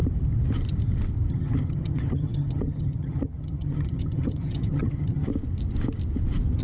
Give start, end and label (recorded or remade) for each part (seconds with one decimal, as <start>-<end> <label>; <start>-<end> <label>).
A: 0.0-1.3 recorded; 1.3-5.3 remade; 5.3-6.6 recorded